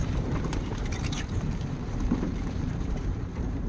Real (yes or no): no